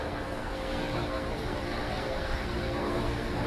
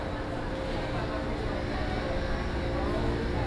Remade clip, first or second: first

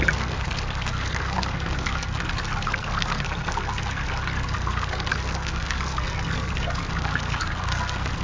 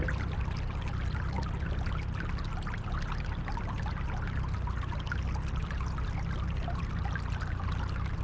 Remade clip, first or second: first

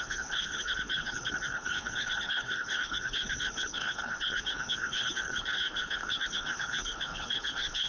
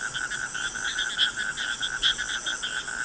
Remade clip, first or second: first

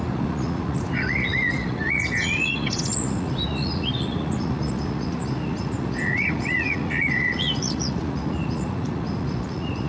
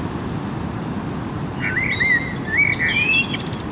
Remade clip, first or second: first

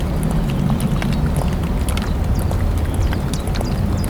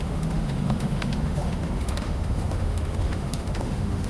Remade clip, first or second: second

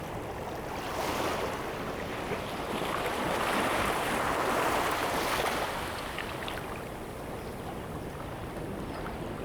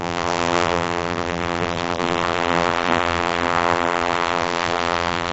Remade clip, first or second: second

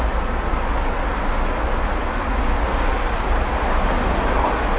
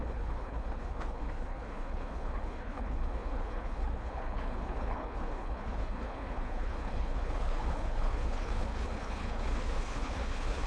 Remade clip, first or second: second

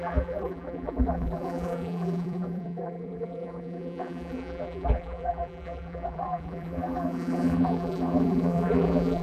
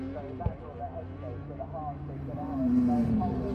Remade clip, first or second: first